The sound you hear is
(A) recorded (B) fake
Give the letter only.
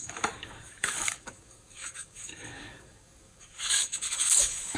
B